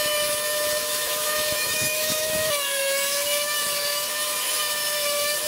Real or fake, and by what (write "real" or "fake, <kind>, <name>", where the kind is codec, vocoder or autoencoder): fake, autoencoder, DAC-VAE